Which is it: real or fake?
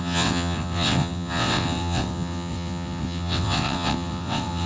fake